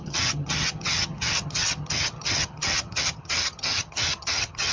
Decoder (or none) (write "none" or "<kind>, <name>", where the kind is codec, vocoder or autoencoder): vocoder, HiFi-GAN